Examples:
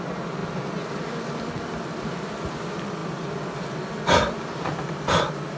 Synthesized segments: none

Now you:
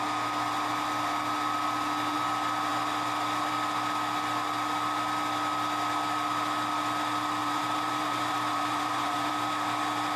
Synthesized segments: 7.4-9.3 (vocoder, BigVGAN v2)

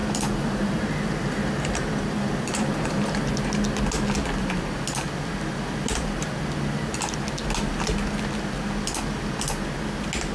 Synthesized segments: 0.0-3.2 (vocoder, BigVGAN v2)

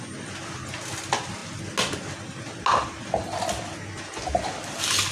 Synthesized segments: none

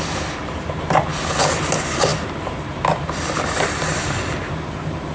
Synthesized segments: 0.4-1.1 (vocoder, BigVGAN v2); 3.9-4.4

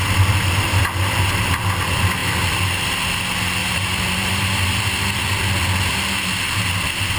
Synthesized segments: 3.6-4.5 (vocoder, BigVGAN v2)

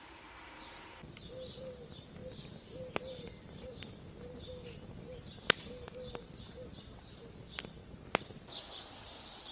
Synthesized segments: 2.2-4.5 (vocoder, BigVGAN v2); 7.8-8.4

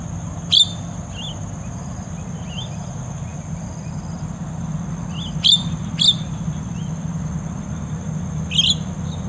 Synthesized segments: 3.3-4.6 (vocoder, BigVGAN v2)